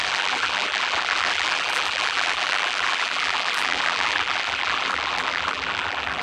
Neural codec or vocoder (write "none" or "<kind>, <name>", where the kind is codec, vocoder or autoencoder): vocoder, BigVGAN v2